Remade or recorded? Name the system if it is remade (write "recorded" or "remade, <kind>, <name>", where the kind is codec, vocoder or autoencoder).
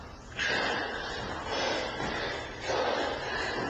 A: recorded